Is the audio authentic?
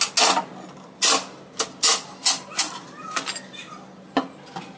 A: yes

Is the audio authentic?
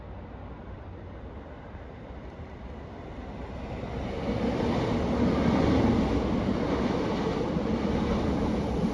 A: yes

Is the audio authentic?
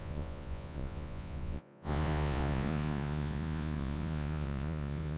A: no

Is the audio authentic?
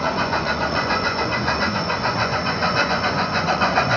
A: no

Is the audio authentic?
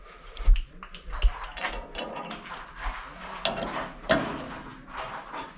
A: yes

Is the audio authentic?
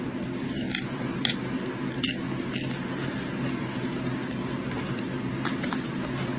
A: yes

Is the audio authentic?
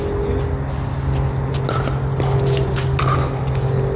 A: yes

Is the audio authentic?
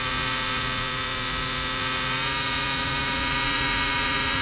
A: no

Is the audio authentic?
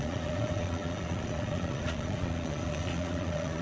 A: no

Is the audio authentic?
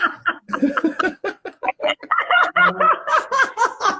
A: no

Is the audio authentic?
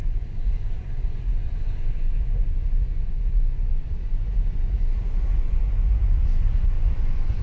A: no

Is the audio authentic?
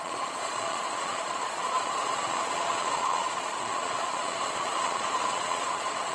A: no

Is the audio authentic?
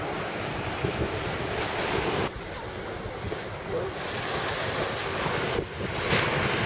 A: yes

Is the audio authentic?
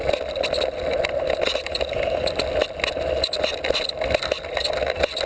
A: yes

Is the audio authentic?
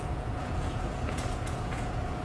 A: no